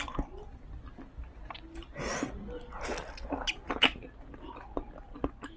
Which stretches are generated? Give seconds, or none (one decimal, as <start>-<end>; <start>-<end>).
none